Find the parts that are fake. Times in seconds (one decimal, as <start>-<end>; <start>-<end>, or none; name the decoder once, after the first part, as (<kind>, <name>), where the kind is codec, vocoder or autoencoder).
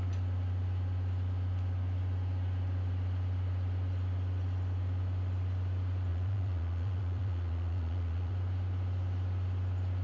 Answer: 6.1-8.3 (vocoder, Vocos)